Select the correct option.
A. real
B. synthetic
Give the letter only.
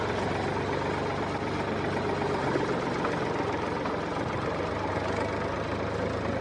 A